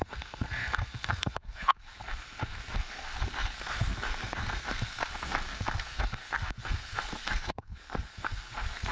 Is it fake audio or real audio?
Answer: fake